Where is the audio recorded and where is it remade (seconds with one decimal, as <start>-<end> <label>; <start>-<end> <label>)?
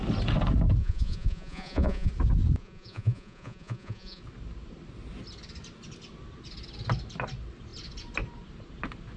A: 0.0-0.8 recorded; 0.8-2.1 remade; 2.1-2.6 recorded; 2.6-4.2 remade; 4.2-9.2 recorded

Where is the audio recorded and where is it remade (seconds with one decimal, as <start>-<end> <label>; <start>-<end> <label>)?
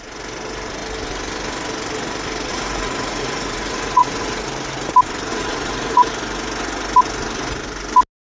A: 0.0-2.5 recorded; 2.5-4.4 remade; 4.4-5.3 recorded; 5.3-6.1 remade; 6.1-8.3 recorded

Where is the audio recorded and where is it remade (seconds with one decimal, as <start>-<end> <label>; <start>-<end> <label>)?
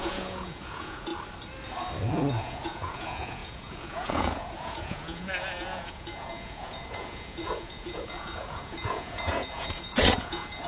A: 0.0-1.1 remade; 1.1-2.4 recorded; 2.4-10.7 remade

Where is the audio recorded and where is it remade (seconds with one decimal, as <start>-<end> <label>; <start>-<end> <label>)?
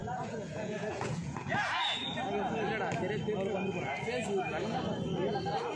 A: 0.0-1.6 remade; 1.6-5.8 recorded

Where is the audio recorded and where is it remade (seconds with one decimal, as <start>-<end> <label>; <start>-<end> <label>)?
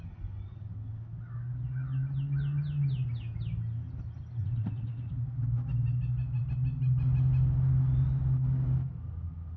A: 0.0-4.4 recorded; 4.4-5.1 remade; 5.1-9.6 recorded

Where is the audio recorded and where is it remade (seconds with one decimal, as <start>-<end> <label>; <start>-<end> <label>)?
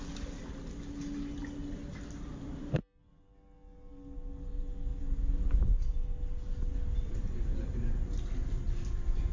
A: 0.0-9.3 recorded